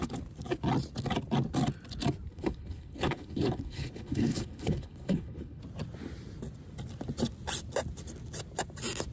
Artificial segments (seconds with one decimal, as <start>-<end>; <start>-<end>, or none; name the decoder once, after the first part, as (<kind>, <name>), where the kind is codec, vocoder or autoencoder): 2.3-5.6 (codec, HILCodec)